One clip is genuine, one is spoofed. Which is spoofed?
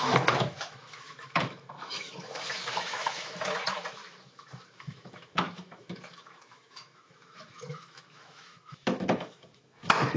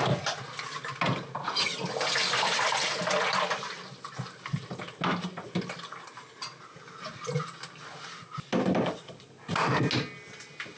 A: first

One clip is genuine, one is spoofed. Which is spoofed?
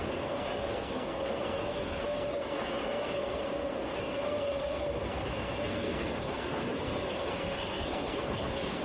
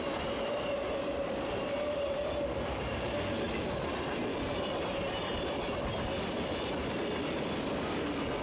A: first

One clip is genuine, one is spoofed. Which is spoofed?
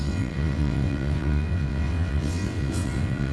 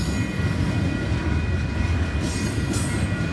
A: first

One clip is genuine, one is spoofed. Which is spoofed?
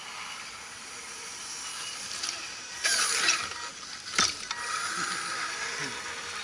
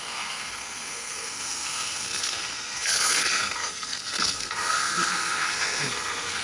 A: second